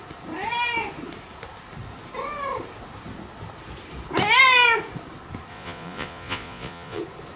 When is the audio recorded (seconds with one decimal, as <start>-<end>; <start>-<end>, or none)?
0.0-5.5; 7.0-7.4